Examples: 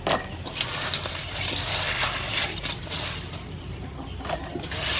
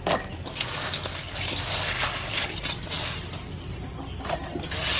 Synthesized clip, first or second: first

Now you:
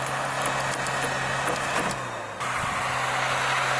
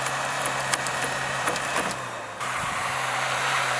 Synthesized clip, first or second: second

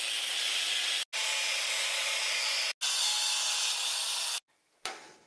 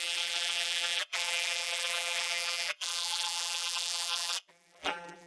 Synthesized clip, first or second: second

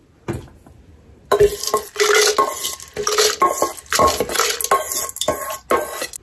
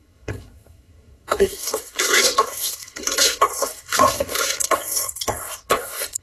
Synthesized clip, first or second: second